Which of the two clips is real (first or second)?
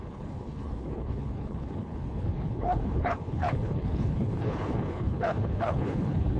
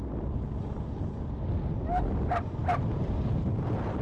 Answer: second